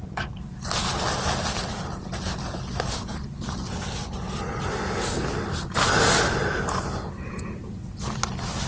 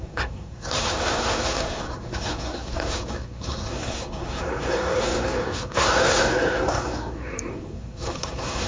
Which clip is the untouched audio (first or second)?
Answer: first